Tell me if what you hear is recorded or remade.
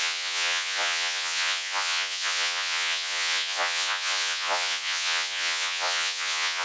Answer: remade